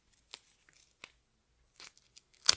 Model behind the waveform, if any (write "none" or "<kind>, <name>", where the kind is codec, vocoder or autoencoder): none